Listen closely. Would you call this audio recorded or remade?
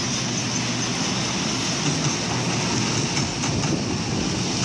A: recorded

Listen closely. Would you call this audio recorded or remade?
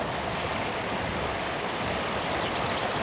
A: recorded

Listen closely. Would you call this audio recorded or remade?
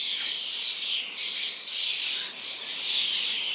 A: remade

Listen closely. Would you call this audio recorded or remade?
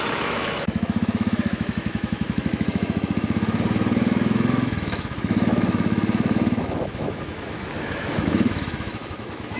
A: remade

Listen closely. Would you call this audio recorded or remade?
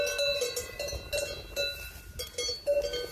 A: recorded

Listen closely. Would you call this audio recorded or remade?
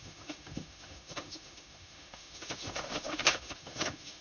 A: remade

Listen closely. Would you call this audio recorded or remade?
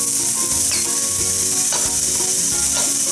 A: recorded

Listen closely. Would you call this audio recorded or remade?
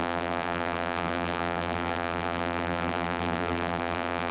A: remade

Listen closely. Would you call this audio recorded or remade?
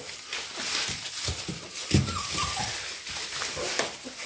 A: recorded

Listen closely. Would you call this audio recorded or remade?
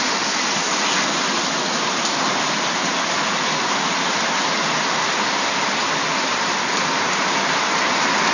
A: recorded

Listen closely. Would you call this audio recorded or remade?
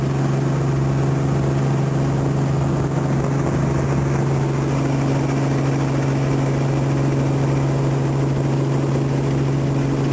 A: recorded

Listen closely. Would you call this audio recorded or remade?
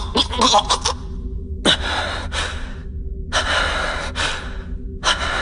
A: recorded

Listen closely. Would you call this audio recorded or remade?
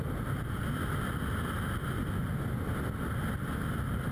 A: recorded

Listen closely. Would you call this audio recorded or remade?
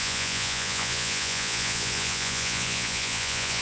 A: remade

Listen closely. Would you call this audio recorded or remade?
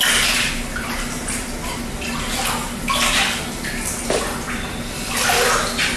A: recorded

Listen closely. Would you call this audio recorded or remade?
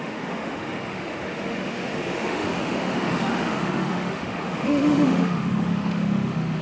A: remade